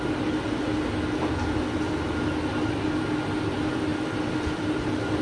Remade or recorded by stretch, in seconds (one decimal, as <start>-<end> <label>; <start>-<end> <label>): 0.0-5.2 recorded